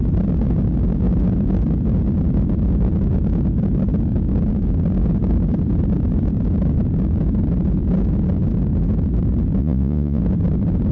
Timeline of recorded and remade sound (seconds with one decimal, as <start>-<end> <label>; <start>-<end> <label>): 0.0-9.6 recorded; 9.6-10.2 remade; 10.2-10.9 recorded